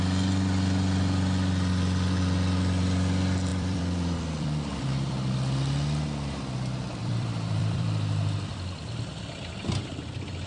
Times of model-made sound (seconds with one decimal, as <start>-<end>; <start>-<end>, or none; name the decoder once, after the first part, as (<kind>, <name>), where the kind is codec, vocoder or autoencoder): 3.5-5.3 (vocoder, BigVGAN v2); 7.0-9.1